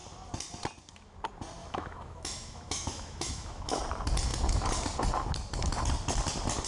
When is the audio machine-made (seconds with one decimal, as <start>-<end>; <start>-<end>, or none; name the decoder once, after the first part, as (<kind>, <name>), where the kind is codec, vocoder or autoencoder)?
1.6-3.8 (autoencoder, DAC-VAE)